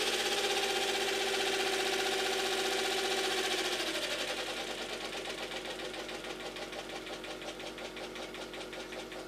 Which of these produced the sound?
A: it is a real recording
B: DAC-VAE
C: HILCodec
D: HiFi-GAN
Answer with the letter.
A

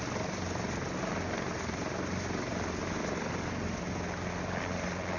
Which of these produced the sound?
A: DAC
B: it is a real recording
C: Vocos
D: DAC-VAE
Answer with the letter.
B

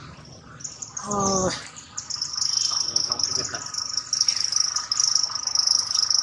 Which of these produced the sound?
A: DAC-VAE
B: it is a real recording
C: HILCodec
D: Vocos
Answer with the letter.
B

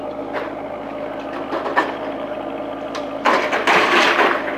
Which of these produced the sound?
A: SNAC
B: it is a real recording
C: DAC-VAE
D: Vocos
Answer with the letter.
B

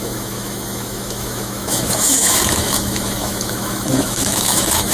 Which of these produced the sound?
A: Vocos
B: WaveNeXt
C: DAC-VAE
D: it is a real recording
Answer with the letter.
C